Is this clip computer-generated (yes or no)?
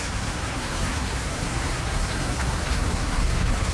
yes